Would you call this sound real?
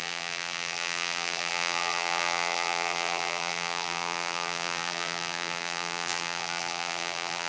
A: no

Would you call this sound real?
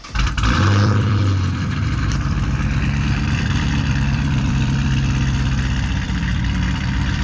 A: no